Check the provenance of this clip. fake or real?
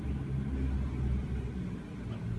real